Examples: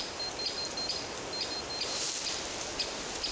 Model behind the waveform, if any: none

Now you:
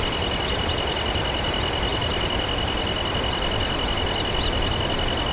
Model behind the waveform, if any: none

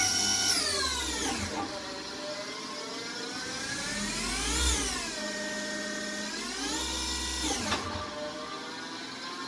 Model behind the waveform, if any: none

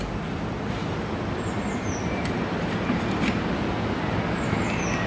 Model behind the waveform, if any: none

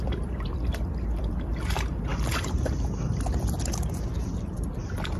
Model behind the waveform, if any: none